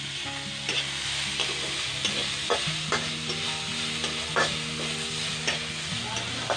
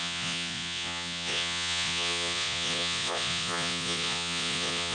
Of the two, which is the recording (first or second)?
first